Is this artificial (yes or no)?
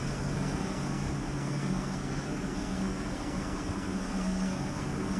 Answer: yes